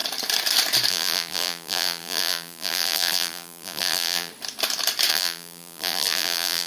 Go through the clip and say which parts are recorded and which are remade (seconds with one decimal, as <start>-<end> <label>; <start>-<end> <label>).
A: 0.0-0.9 recorded; 0.9-4.3 remade; 4.3-5.1 recorded; 5.1-6.7 remade